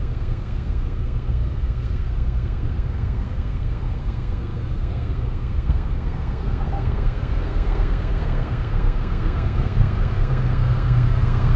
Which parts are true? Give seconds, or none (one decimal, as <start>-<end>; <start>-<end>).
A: none

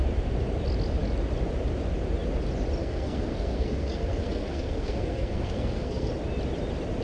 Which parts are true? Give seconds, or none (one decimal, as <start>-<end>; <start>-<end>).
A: 0.0-2.8; 6.1-7.0

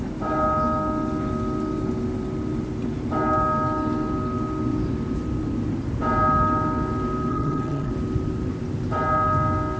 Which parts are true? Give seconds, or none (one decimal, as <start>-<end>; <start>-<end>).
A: 0.0-7.3; 7.9-9.8

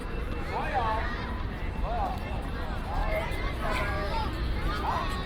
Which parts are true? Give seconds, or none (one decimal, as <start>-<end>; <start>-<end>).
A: 0.0-5.3

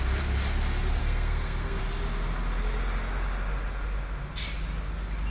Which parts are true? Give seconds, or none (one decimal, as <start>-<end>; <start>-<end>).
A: 0.0-1.0; 1.8-5.3

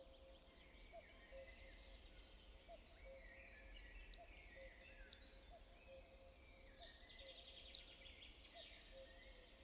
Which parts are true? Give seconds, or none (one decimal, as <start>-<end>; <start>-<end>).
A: 0.0-9.6

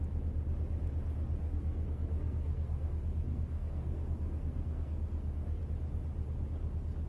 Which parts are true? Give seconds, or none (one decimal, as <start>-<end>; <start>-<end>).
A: 0.0-1.4; 5.6-7.1